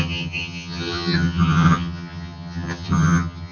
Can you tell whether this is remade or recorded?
remade